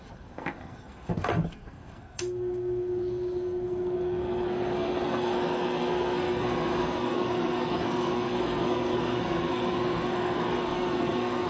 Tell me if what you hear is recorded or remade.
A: remade